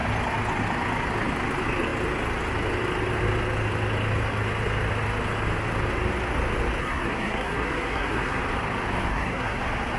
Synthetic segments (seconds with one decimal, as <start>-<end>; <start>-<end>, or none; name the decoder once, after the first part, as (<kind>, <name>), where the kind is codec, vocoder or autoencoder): 6.8-8.4 (codec, SNAC); 9.1-9.6